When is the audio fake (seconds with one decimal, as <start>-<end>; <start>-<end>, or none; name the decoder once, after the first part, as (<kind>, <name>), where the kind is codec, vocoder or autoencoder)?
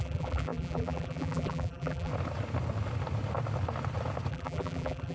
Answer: 0.0-2.1 (vocoder, BigVGAN v2); 4.3-5.1